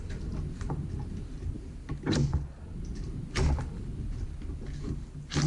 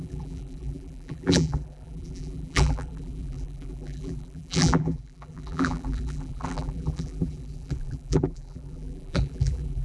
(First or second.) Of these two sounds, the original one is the first